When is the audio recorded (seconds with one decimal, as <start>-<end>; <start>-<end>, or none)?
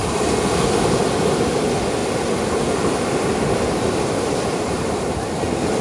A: 0.0-5.8